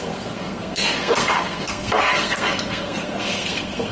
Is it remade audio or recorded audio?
remade